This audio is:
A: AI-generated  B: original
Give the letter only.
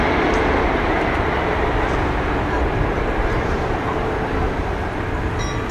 B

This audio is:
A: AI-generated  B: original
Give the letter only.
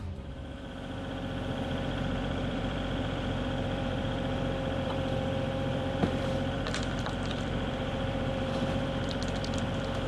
A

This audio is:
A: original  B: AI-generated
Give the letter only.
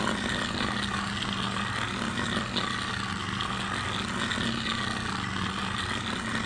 A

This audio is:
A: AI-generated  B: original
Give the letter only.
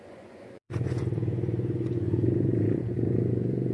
A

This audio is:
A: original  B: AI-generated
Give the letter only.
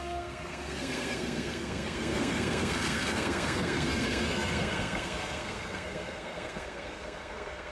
B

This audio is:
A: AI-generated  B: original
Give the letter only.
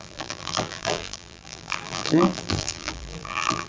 A